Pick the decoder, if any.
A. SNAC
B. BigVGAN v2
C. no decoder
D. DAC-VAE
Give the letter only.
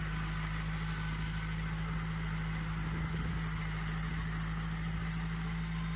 C